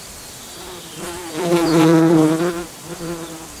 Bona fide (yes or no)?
no